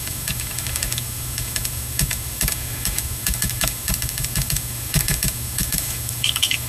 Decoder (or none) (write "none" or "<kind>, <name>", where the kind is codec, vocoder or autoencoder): autoencoder, DAC-VAE